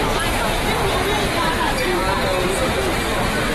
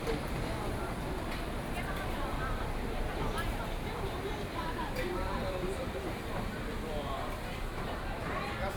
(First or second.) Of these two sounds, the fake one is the second